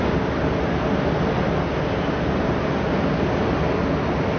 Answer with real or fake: real